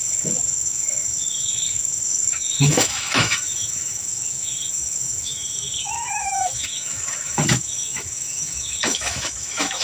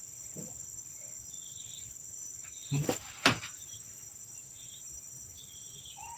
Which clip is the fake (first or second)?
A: first